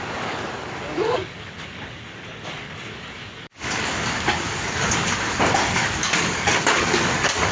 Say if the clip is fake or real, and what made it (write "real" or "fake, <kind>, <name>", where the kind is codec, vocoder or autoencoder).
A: fake, codec, DAC